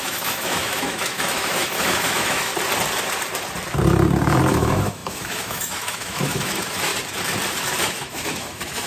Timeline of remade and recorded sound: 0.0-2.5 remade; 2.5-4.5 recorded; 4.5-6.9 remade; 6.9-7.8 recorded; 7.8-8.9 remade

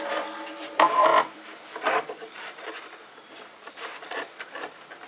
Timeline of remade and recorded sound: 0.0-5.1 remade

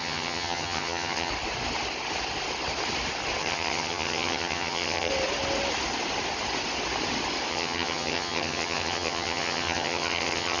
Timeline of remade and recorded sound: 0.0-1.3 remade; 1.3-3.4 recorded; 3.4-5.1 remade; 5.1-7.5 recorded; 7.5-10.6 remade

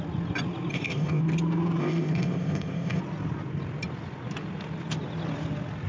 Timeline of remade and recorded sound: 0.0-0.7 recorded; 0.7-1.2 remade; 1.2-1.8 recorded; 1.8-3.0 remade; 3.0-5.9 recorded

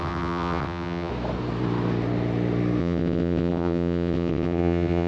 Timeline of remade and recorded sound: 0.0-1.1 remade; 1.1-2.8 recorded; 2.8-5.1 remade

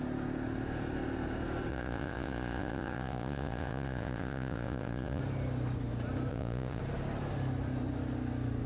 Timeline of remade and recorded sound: 0.0-1.7 recorded; 1.7-5.2 remade; 5.2-6.3 recorded; 6.3-6.8 remade; 6.8-8.7 recorded

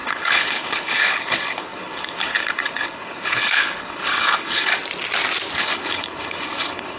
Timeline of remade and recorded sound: 0.0-4.7 remade; 4.7-5.5 recorded; 5.5-7.0 remade